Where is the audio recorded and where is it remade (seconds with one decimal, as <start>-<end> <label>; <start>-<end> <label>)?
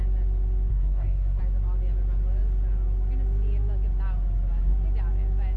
0.0-0.7 recorded; 0.7-1.4 remade; 1.4-5.6 recorded